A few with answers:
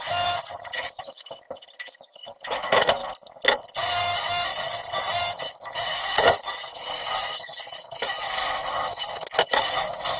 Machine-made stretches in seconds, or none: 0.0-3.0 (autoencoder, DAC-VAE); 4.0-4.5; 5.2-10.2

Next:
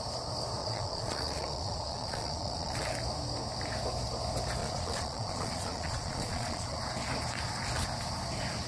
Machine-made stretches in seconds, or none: 0.6-2.8 (vocoder, Vocos); 4.6-6.8

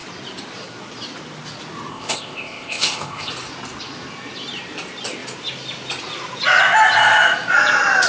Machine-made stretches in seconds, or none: 1.9-3.3 (codec, ZipCodec)

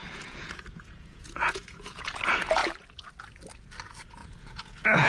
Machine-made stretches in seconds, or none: 0.0-2.1 (vocoder, Vocos); 4.2-5.1